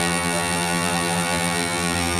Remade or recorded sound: remade